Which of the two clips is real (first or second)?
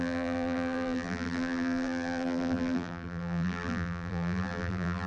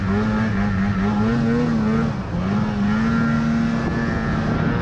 second